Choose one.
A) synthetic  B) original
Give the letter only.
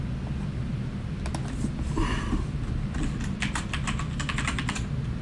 B